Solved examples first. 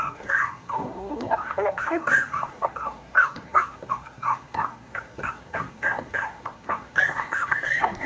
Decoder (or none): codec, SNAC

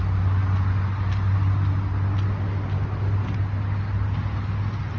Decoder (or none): none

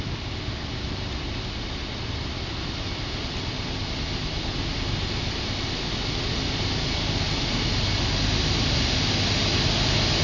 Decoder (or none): none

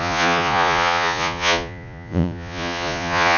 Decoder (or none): vocoder, Vocos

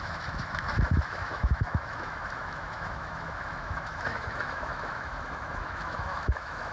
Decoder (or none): autoencoder, DAC-VAE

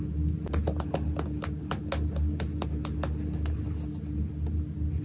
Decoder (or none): none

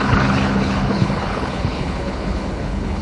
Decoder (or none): codec, HILCodec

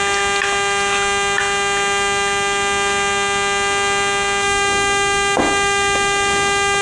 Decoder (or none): none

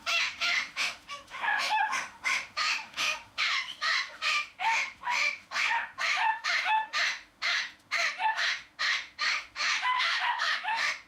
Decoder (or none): autoencoder, DAC-VAE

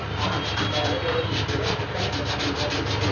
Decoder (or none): none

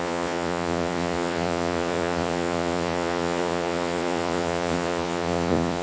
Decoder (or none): vocoder, Vocos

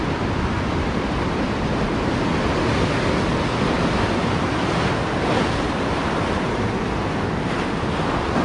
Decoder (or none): none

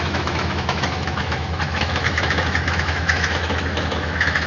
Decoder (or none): autoencoder, DAC-VAE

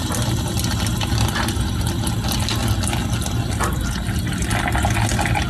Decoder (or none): none